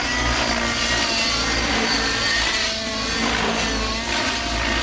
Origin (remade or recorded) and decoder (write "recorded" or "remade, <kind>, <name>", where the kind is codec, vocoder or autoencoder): recorded